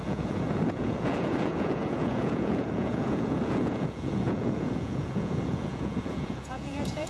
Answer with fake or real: fake